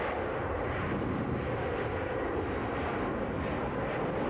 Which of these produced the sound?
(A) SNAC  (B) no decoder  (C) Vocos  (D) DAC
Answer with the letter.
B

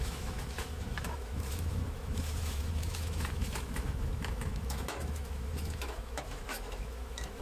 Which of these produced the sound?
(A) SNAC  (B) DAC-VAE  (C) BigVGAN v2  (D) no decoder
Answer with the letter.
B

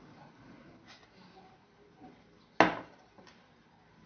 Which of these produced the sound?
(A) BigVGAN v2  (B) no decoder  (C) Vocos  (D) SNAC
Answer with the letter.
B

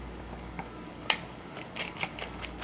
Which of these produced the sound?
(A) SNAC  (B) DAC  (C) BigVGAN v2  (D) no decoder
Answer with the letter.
B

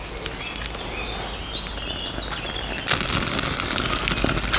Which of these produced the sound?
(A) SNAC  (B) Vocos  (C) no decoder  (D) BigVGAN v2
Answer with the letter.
C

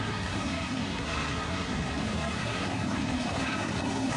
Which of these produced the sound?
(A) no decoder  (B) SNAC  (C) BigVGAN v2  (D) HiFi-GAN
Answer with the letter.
B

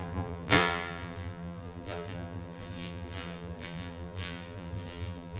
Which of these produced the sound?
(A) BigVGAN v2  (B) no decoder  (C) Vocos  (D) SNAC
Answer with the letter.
A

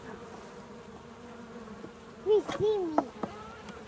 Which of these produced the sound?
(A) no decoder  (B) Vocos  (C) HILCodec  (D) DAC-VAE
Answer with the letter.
A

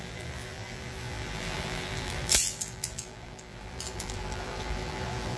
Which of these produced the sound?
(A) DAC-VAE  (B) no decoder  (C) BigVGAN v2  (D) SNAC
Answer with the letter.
C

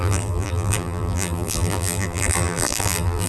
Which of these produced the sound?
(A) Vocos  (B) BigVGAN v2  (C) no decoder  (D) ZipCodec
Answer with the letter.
B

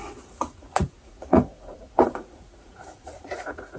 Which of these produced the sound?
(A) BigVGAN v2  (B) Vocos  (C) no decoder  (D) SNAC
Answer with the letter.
B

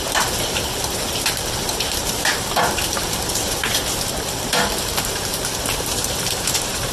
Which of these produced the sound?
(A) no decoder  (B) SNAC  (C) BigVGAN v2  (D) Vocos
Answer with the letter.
C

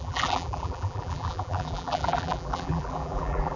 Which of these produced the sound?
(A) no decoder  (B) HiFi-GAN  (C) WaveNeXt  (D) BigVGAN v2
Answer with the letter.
D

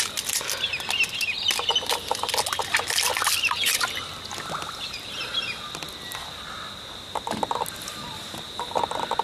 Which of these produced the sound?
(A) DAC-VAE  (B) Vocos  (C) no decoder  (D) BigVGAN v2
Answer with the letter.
C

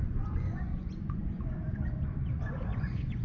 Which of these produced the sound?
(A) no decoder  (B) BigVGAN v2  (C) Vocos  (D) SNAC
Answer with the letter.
C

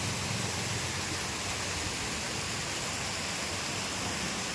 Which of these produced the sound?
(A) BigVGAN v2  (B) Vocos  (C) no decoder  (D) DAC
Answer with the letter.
C